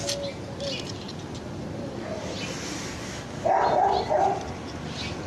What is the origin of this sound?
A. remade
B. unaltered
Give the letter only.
B